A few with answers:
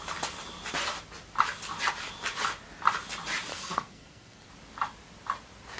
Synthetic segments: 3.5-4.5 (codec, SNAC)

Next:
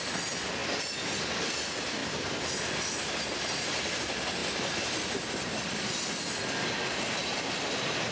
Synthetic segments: none

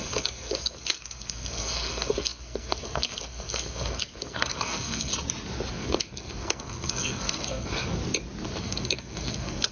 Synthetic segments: 0.0-5.1 (codec, SNAC); 5.7-8.0; 8.6-9.7

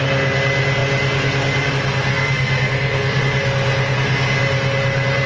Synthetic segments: 2.1-3.2 (codec, SNAC)